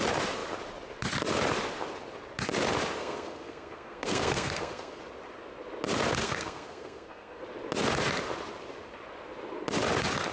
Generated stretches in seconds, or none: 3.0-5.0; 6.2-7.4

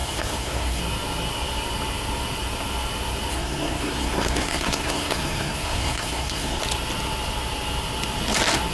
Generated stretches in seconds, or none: 0.0-0.8; 3.3-6.6